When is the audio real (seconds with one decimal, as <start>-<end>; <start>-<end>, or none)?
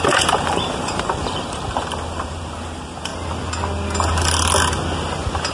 3.1-5.5